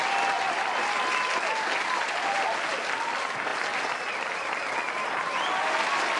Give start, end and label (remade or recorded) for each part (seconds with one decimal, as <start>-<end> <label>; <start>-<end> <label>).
0.0-6.2 recorded